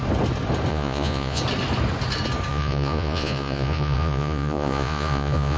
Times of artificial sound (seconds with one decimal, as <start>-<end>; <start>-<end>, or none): 0.7-1.4; 2.5-5.6